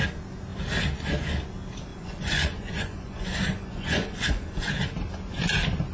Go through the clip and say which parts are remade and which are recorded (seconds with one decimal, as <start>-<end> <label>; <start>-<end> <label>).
0.0-1.9 recorded; 1.9-4.7 remade; 4.7-5.9 recorded

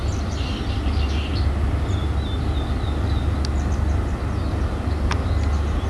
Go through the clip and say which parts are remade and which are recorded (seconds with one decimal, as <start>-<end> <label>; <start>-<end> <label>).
0.0-5.9 recorded

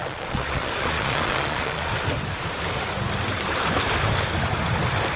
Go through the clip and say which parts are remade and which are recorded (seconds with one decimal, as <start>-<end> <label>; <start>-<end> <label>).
0.0-1.9 remade; 1.9-5.2 recorded

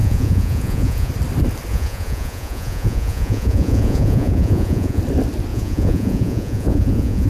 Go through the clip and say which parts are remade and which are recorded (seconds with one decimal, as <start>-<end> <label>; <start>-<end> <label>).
0.0-1.1 remade; 1.1-1.7 recorded; 1.7-5.0 remade; 5.0-5.5 recorded; 5.5-7.3 remade

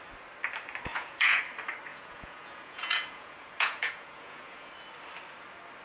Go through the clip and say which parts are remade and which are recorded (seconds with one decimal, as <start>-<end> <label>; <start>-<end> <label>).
0.0-0.9 recorded; 0.9-1.4 remade; 1.4-1.9 recorded; 1.9-4.7 remade; 4.7-5.8 recorded

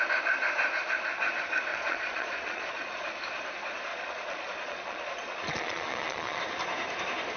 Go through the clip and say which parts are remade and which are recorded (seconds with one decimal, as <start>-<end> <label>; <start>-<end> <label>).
0.0-1.7 recorded; 1.7-3.0 remade; 3.0-3.9 recorded; 3.9-6.4 remade; 6.4-7.4 recorded

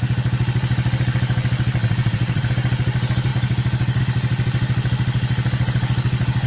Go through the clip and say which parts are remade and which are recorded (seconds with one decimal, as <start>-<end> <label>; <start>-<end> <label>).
0.0-1.8 recorded; 1.8-2.5 remade; 2.5-6.5 recorded

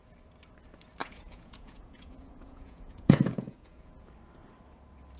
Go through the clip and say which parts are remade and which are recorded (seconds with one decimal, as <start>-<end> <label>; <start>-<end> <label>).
0.0-1.0 recorded; 1.0-4.1 remade; 4.1-5.2 recorded